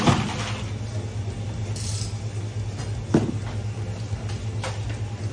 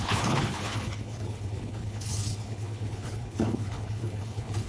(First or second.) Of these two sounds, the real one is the first